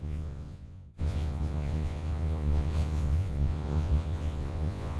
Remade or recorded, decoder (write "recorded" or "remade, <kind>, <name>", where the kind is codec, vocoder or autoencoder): remade, vocoder, Vocos